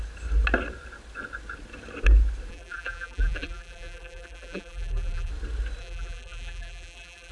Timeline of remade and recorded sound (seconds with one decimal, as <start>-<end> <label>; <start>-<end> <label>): 0.0-2.5 recorded; 2.5-5.3 remade; 5.3-5.8 recorded; 5.8-7.3 remade